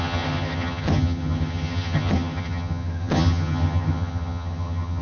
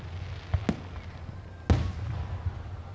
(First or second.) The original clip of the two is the second